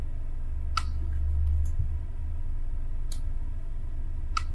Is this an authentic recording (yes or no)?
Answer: yes